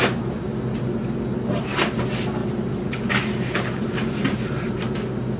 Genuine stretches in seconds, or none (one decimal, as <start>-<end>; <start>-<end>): 0.0-2.4